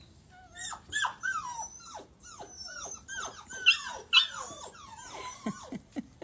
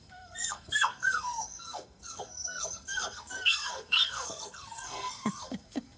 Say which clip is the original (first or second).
first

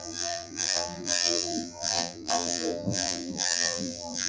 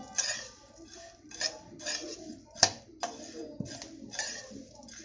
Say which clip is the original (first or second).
second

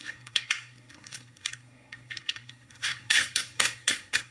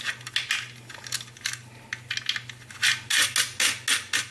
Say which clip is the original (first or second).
second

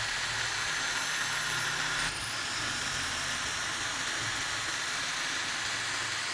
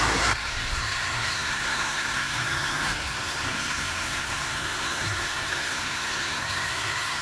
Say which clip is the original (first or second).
first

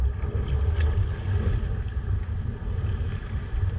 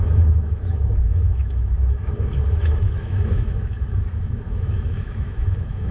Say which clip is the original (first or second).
first